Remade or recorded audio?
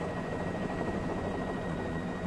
remade